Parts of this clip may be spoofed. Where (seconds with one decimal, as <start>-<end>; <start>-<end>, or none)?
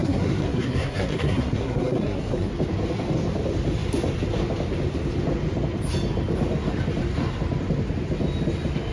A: 0.0-2.5